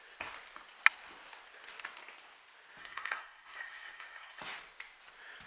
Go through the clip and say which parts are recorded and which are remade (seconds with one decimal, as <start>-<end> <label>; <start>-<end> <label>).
0.0-2.8 recorded; 2.8-4.4 remade; 4.4-5.5 recorded